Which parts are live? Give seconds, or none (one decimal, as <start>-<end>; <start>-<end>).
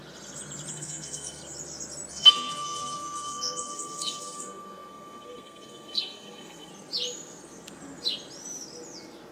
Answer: 0.0-0.7; 1.4-2.1; 6.7-9.3